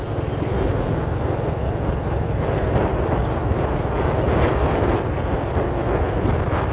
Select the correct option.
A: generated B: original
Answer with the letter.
B